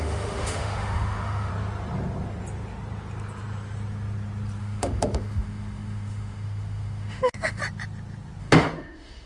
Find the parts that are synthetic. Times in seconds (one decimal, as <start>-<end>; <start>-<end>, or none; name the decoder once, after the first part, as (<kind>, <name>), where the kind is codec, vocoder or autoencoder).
0.0-1.5 (autoencoder, DAC-VAE); 4.6-7.6; 8.4-9.3